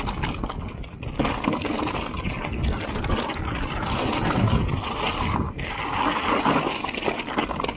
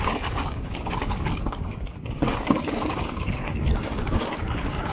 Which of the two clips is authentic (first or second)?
first